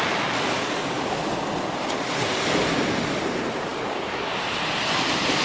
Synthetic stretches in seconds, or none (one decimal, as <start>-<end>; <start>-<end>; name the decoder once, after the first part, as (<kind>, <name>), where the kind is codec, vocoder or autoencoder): 3.7-4.3 (codec, DAC)

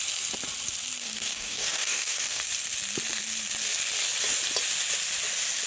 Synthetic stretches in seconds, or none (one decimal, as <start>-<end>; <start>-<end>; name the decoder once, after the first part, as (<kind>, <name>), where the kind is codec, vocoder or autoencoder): 1.0-2.4 (codec, DAC)